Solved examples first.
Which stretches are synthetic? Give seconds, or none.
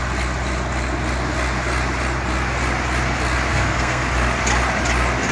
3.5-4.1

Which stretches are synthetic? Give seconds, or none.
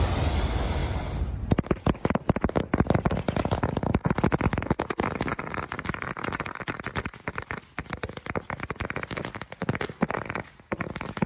none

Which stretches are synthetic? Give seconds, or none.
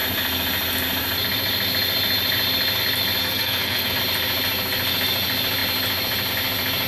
3.2-4.0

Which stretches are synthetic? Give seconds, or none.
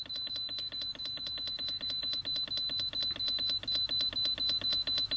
none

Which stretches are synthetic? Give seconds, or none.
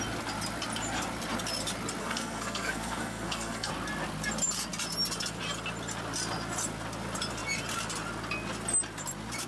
2.0-3.7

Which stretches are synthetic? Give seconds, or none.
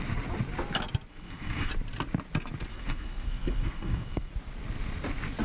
1.1-1.7; 2.7-4.3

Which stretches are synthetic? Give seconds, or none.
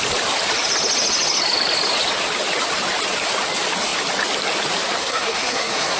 5.0-6.0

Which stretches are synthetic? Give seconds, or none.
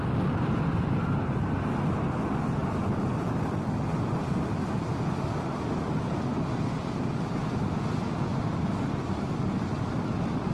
none